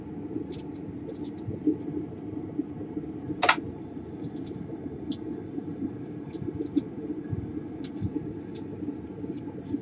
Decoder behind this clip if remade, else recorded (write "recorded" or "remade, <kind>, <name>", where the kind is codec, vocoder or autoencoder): recorded